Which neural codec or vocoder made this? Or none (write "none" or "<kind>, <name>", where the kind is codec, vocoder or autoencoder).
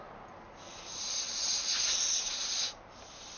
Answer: none